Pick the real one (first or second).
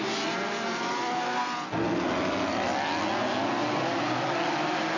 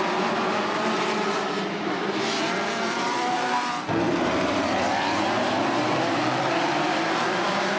first